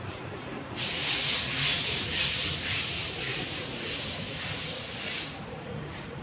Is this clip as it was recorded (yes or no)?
no